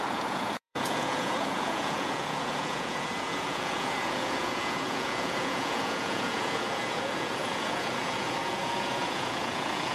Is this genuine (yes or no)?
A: no